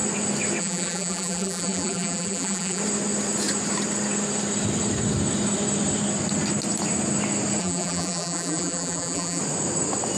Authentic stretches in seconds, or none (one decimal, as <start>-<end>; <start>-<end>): 0.0-0.6; 2.8-7.6; 9.4-10.2